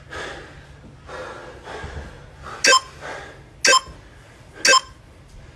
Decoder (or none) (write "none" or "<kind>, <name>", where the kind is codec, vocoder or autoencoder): none